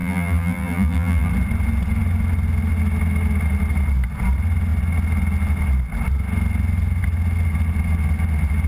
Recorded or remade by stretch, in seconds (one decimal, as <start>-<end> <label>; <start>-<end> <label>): 0.0-1.3 remade; 1.3-8.7 recorded